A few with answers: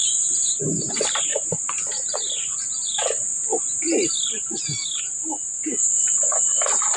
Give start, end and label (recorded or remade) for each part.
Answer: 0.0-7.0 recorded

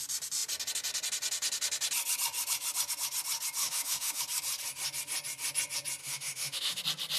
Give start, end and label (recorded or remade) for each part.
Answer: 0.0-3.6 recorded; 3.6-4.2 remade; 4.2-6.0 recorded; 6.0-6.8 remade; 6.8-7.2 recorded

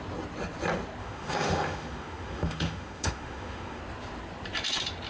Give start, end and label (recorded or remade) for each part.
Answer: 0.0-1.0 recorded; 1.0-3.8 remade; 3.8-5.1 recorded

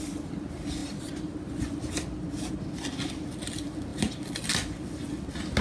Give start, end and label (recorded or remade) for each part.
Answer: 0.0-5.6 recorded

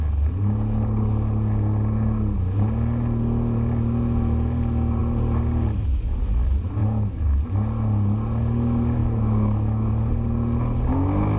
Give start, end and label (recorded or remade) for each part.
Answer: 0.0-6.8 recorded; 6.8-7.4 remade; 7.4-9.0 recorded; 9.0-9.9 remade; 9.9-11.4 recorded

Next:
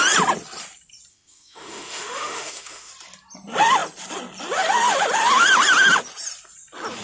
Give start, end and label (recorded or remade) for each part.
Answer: 0.0-1.1 recorded; 1.1-2.9 remade; 2.9-7.0 recorded